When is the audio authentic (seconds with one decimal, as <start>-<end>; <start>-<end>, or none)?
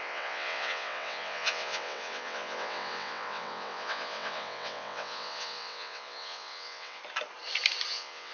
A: 7.0-7.9